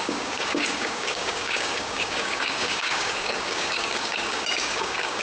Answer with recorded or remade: remade